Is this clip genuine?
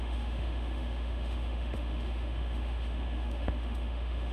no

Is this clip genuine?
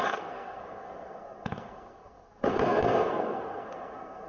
no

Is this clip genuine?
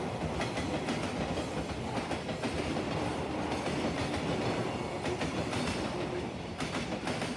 yes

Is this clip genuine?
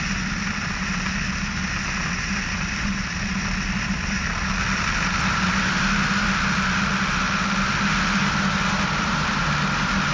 yes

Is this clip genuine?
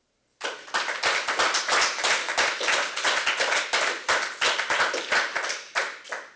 yes